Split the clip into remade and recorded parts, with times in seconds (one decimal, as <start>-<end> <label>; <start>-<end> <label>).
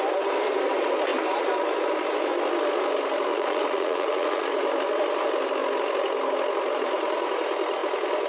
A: 0.0-3.3 recorded; 3.3-4.5 remade; 4.5-8.3 recorded